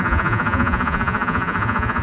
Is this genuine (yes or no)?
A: no